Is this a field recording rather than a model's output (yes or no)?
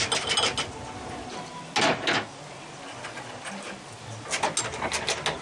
yes